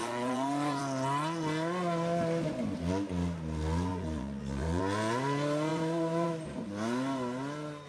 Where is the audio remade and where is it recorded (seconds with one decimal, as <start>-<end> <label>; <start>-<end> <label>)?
0.0-0.8 remade; 0.8-3.9 recorded; 3.9-4.8 remade; 4.8-5.7 recorded; 5.7-6.3 remade; 6.3-7.9 recorded